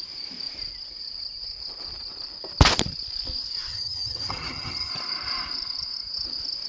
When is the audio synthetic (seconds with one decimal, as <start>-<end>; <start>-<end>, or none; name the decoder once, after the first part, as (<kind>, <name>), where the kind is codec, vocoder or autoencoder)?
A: 3.7-4.9 (vocoder, HiFi-GAN)